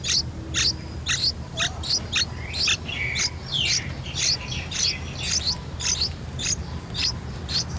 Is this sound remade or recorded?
recorded